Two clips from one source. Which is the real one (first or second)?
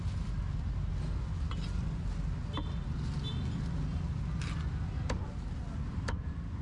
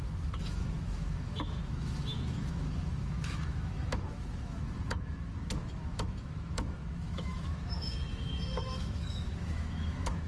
first